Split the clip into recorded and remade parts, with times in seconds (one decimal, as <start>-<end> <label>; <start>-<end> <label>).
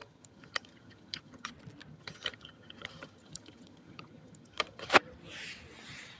0.0-1.5 remade; 1.5-1.9 recorded; 1.9-4.9 remade; 4.9-6.2 recorded